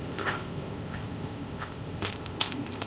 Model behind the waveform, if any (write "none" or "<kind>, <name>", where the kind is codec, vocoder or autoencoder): codec, ZipCodec